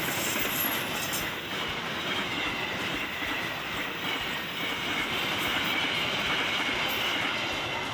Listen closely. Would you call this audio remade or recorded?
recorded